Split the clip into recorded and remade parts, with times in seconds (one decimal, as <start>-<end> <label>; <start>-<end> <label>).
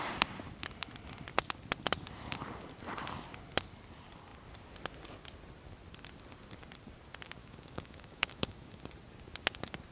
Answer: 0.0-7.4 recorded; 7.4-8.8 remade; 8.8-9.9 recorded